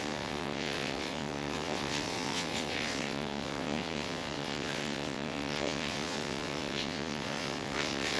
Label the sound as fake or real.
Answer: fake